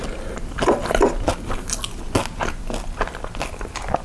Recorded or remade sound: recorded